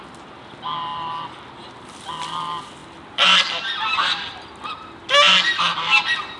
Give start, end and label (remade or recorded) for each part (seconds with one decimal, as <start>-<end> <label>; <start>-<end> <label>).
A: 0.0-2.8 recorded; 2.8-3.7 remade; 3.7-6.4 recorded